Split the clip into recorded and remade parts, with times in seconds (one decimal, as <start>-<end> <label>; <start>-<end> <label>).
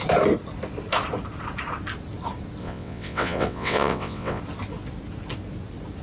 0.0-2.6 recorded; 2.6-4.4 remade; 4.4-6.0 recorded